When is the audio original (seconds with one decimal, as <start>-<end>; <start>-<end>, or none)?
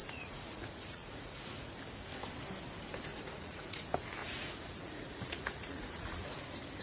1.7-3.1; 3.8-4.2; 6.3-6.8